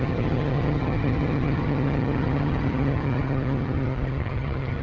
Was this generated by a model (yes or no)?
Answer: yes